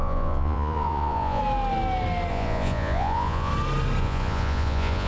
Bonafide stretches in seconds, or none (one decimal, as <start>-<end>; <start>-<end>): 1.4-2.3; 3.5-4.0